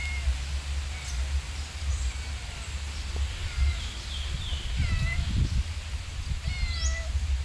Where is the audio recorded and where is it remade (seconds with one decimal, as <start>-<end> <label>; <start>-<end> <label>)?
0.0-7.4 recorded